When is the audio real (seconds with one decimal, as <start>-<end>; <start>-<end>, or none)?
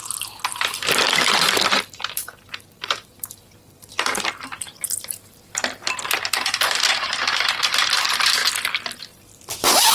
8.4-9.5